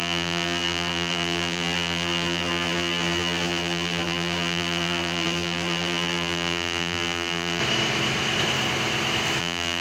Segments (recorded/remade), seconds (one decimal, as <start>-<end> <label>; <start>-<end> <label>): 0.0-7.6 remade; 7.6-9.4 recorded; 9.4-9.8 remade